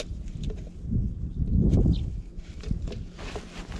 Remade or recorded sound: recorded